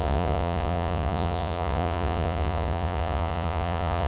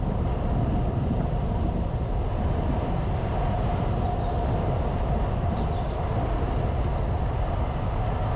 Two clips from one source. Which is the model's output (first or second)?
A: first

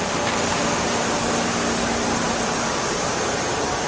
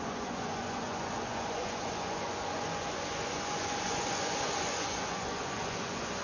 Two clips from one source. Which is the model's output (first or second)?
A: second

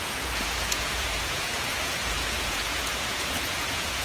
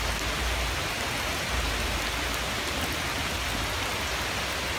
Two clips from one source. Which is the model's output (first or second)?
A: first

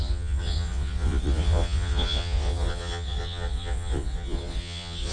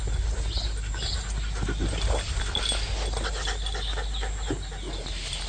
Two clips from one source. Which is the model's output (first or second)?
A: first